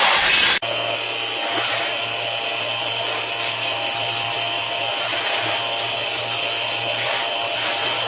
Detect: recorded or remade recorded